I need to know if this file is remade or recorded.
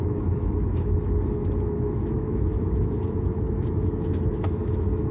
remade